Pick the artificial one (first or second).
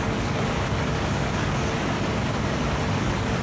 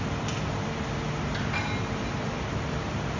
first